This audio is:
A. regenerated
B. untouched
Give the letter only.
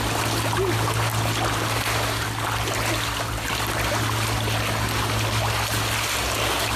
B